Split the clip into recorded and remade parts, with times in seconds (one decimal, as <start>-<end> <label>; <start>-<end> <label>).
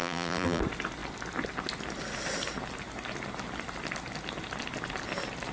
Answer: 0.0-0.6 remade; 0.6-5.5 recorded